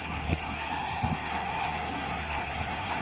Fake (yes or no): yes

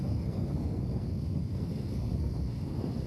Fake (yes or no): yes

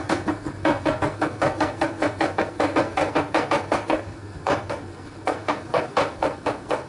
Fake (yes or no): yes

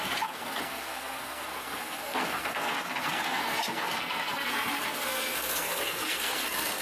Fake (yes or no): yes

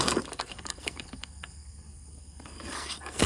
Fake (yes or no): yes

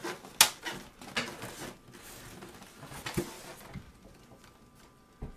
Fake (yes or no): no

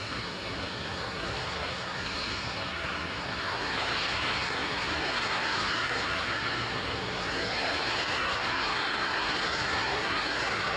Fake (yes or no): yes